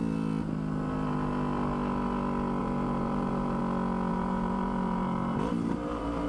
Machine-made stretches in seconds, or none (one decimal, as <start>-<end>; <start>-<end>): 2.6-3.6; 4.1-6.3